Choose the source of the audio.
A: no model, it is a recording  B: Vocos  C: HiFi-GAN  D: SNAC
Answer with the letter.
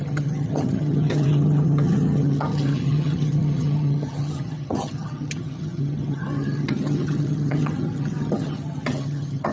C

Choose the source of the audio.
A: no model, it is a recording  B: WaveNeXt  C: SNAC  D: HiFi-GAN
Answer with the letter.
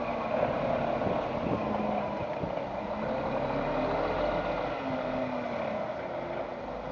A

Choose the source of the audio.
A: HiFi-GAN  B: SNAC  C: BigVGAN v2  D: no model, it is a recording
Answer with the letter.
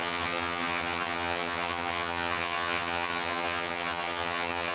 A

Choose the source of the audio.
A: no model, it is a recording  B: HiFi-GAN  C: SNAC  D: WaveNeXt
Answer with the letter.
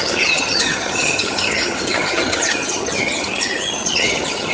B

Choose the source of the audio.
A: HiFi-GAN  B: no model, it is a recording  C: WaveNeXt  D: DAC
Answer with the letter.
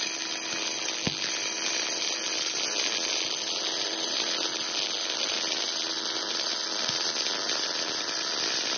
B